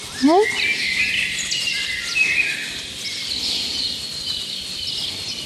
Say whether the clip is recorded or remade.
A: recorded